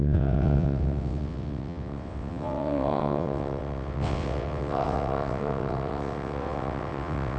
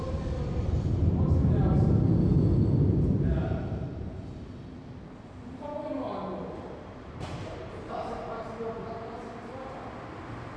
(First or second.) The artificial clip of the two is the first